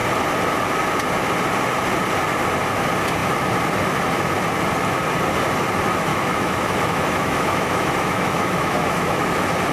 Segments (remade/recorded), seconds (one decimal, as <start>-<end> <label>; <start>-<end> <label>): 0.0-6.1 recorded; 6.1-9.2 remade; 9.2-9.7 recorded